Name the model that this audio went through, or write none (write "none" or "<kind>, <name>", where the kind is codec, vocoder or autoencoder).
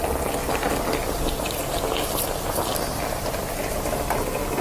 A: none